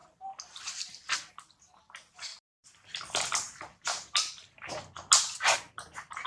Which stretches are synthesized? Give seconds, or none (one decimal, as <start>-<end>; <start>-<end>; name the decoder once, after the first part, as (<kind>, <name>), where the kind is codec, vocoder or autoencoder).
0.0-1.3 (vocoder, BigVGAN v2); 2.3-3.6